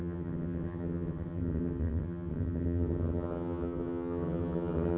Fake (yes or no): yes